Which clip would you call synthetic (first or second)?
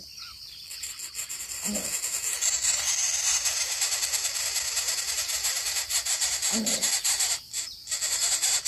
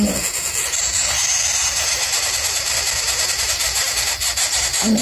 first